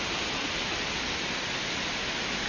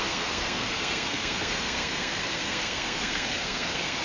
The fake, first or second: second